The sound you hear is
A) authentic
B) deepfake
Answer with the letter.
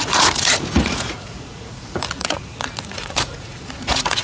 B